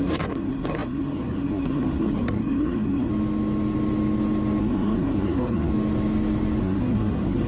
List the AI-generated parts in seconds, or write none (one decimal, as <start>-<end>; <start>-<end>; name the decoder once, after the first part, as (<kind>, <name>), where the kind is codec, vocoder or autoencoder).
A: 0.0-3.1 (codec, SNAC); 4.6-5.7; 6.6-7.5